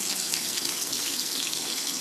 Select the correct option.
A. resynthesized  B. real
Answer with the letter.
A